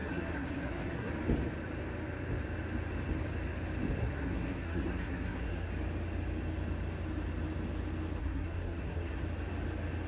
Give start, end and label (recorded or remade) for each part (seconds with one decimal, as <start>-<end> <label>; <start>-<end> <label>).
0.0-1.1 remade; 1.1-4.0 recorded; 4.0-5.7 remade; 5.7-8.2 recorded; 8.2-9.2 remade; 9.2-10.1 recorded